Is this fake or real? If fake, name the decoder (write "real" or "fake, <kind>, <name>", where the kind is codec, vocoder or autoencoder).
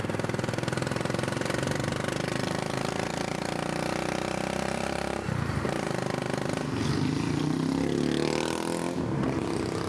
real